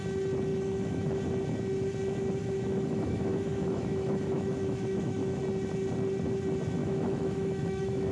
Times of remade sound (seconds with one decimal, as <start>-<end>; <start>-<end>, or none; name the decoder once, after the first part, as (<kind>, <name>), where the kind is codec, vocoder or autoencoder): 0.5-1.2 (autoencoder, DAC-VAE); 2.4-5.4; 6.8-8.1